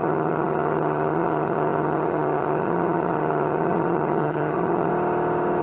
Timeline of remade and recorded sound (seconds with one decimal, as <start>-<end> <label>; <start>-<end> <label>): 0.0-4.9 remade; 4.9-5.6 recorded